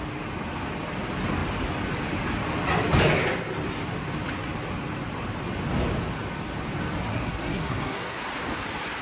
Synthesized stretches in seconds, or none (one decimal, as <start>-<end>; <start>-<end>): 7.1-8.2